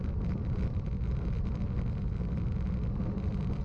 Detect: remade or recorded remade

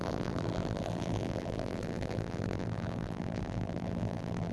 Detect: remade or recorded remade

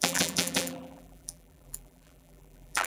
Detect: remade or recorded remade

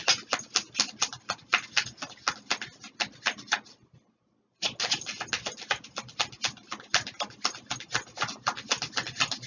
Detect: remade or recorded recorded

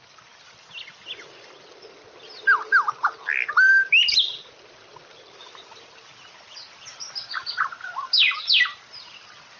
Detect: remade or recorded recorded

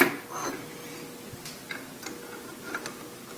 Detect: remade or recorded recorded